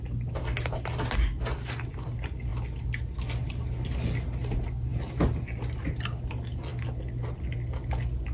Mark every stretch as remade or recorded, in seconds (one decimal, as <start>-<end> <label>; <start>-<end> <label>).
0.0-8.3 recorded